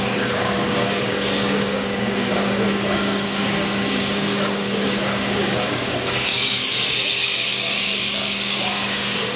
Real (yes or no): no